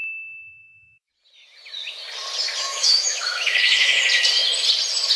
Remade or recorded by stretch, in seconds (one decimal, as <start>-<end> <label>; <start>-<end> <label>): 0.0-1.1 remade; 1.1-2.6 recorded; 2.6-4.0 remade; 4.0-5.2 recorded